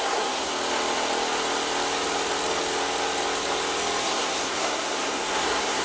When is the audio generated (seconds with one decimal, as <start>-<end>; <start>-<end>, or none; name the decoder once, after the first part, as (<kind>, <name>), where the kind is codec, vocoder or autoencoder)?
0.0-0.5 (codec, SNAC); 4.0-5.8